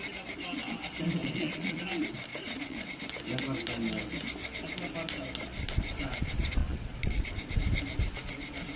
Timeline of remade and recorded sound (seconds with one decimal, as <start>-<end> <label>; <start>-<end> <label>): 0.0-1.2 recorded; 1.2-1.8 remade; 1.8-2.3 recorded; 2.3-3.0 remade; 3.0-6.6 recorded; 6.6-7.5 remade; 7.5-8.8 recorded